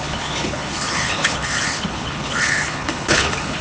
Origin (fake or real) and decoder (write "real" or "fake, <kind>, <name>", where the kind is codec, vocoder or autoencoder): fake, codec, HILCodec